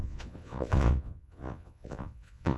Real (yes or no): no